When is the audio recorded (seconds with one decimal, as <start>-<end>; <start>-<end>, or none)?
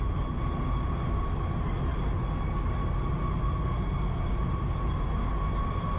0.0-6.0